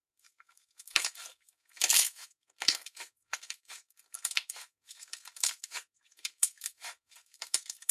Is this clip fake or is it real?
fake